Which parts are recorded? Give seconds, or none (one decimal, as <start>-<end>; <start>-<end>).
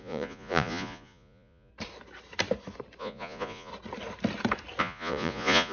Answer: 1.7-3.0; 3.7-4.8